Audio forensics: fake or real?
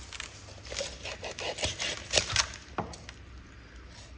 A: real